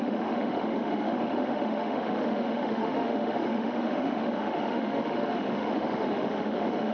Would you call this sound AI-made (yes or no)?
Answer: yes